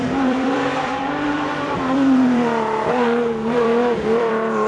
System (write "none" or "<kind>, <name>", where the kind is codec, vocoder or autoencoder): vocoder, BigVGAN v2